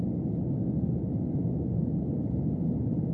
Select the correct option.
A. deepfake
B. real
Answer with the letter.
B